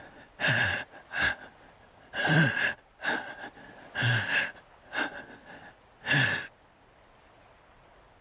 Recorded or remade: recorded